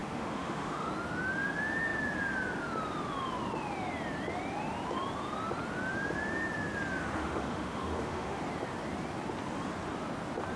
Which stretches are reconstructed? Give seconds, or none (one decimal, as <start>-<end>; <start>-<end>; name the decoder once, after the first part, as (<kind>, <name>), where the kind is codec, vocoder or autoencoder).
0.0-0.9 (autoencoder, DAC-VAE); 7.2-8.4